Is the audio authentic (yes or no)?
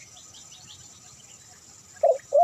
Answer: yes